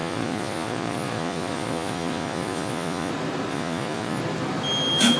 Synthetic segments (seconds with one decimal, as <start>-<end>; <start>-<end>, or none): 0.0-3.1; 3.5-4.2